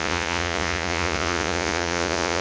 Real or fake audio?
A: fake